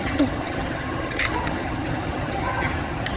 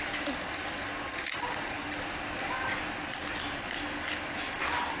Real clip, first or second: second